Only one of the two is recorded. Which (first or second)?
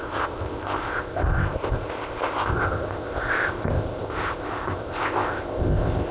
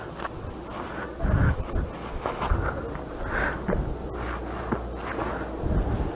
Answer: second